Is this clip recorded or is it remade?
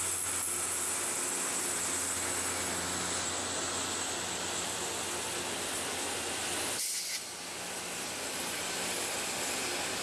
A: recorded